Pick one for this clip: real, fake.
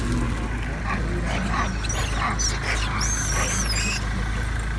real